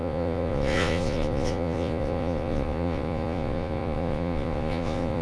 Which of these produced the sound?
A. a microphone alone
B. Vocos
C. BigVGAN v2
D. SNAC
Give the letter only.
B